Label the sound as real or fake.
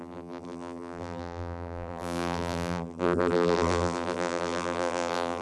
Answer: fake